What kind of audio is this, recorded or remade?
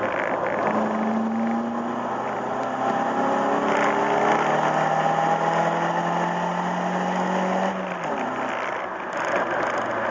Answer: recorded